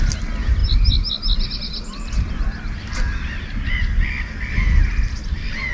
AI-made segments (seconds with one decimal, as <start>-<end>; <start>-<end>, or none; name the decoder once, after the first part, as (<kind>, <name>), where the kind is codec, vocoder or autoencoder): 0.6-3.7 (vocoder, BigVGAN v2); 4.8-5.7